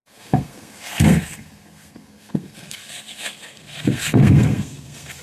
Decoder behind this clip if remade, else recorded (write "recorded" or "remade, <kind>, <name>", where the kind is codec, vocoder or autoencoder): remade, codec, SNAC